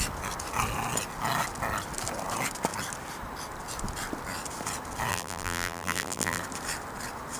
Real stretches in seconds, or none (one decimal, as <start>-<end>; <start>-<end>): 0.0-5.1; 6.4-7.4